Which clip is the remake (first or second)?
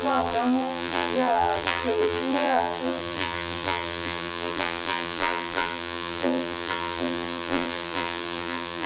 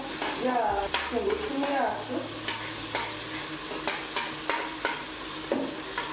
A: first